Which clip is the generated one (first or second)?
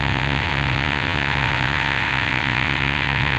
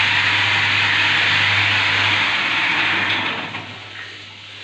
first